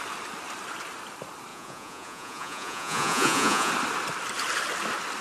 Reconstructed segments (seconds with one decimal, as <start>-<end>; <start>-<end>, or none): 1.5-3.7